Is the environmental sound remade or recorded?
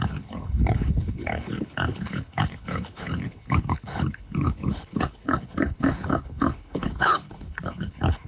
remade